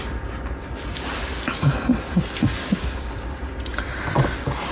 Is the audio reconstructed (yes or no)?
no